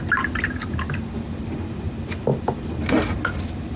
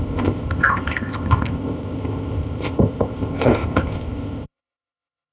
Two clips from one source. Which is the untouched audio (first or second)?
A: first